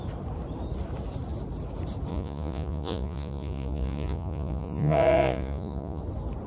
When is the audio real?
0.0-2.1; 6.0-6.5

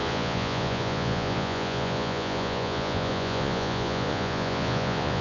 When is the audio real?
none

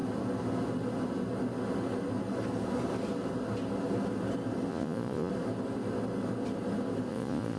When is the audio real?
0.0-4.7; 5.3-7.1

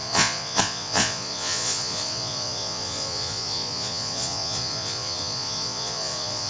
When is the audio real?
none

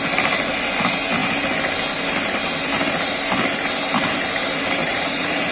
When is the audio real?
0.0-4.8

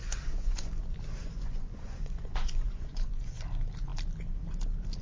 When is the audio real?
0.7-1.2; 3.4-5.0

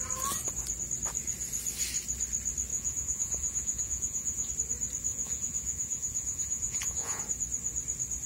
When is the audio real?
0.0-2.7; 4.5-5.1; 7.2-8.3